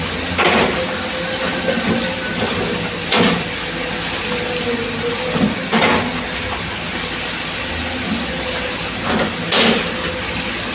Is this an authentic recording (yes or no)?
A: yes